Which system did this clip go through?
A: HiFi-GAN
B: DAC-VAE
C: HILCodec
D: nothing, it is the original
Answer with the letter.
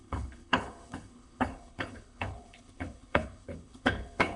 C